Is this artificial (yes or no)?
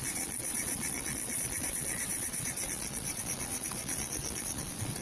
yes